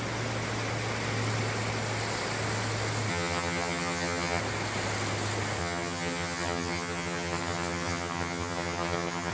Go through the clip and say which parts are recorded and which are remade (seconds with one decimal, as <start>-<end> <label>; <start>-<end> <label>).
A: 0.0-3.1 recorded; 3.1-4.4 remade; 4.4-5.6 recorded; 5.6-9.3 remade

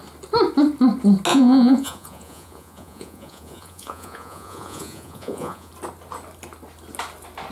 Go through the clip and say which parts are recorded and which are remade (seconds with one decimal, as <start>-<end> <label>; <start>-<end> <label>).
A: 0.0-1.3 recorded; 1.3-5.7 remade; 5.7-7.5 recorded